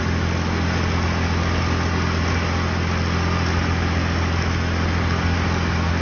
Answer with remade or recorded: recorded